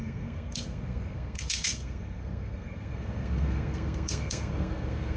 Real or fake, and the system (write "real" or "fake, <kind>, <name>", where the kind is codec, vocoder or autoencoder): fake, codec, SNAC